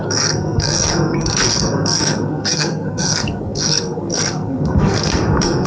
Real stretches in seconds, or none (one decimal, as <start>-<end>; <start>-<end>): none